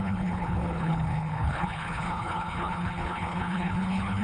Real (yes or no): no